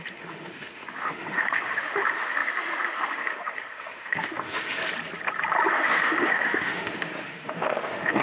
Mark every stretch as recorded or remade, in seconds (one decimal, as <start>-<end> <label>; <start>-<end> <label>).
0.0-4.8 remade; 4.8-5.7 recorded; 5.7-8.2 remade